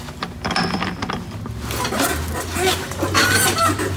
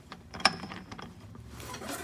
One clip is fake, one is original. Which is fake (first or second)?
second